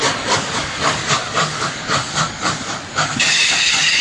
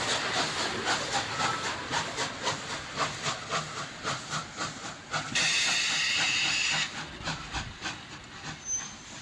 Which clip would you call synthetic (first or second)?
first